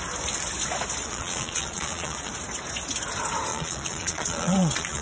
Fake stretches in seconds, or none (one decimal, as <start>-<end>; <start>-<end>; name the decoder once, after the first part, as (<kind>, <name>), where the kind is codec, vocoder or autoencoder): 1.0-2.3 (vocoder, Vocos); 3.5-5.0